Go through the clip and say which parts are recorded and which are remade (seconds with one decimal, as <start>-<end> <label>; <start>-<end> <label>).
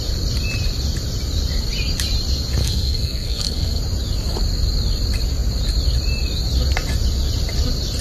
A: 0.0-2.6 recorded; 2.6-3.8 remade; 3.8-8.0 recorded